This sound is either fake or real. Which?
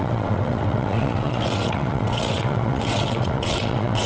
fake